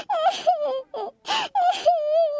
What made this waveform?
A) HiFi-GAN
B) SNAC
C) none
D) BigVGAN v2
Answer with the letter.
C